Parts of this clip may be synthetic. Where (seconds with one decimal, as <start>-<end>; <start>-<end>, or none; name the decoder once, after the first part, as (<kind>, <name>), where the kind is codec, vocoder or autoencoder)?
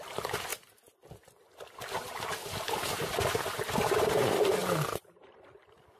4.6-5.4 (vocoder, BigVGAN v2)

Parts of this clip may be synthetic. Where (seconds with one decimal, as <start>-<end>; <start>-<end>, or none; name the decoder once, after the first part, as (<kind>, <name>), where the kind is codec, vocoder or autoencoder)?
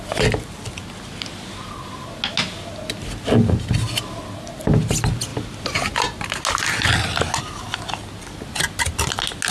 none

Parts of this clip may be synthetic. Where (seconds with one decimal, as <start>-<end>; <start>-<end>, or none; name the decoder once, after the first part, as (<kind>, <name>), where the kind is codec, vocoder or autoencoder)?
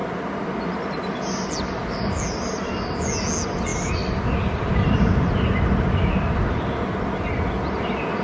0.0-0.6 (vocoder, BigVGAN v2); 3.7-5.5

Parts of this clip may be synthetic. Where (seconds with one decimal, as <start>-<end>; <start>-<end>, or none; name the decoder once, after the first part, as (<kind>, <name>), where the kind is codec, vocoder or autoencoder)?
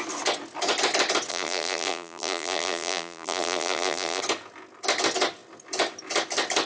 1.3-4.2 (vocoder, BigVGAN v2)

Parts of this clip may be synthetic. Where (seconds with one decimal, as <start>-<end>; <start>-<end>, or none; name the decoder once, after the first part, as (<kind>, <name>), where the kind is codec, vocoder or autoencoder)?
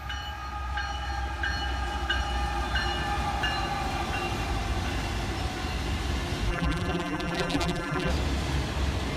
6.5-8.1 (vocoder, BigVGAN v2)